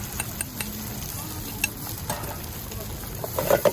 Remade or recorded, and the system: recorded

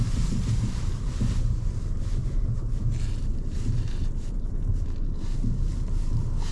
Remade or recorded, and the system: remade, vocoder, BigVGAN v2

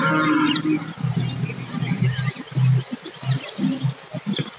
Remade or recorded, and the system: recorded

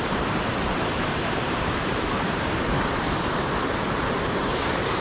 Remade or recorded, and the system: remade, vocoder, BigVGAN v2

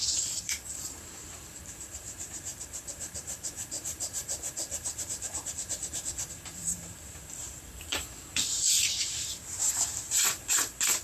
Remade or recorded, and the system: remade, vocoder, BigVGAN v2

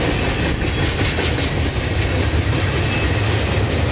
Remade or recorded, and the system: recorded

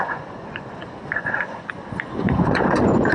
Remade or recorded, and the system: remade, vocoder, Vocos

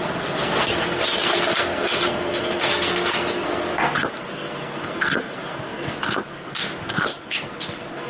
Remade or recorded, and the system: remade, codec, SNAC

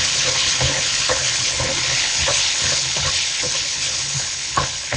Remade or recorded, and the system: remade, codec, HILCodec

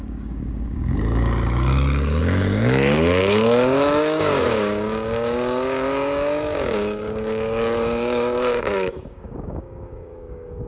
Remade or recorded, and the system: remade, codec, DAC